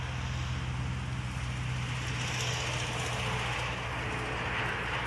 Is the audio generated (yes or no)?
no